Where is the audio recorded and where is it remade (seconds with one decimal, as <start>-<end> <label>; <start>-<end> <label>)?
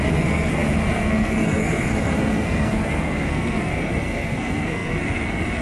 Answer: 0.0-5.6 remade